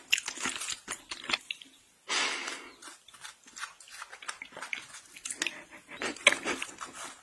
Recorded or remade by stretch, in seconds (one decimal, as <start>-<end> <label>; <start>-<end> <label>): 0.0-7.2 recorded